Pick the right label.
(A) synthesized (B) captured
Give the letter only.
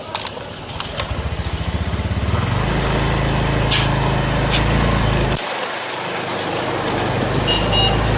B